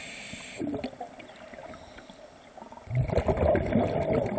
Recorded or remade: recorded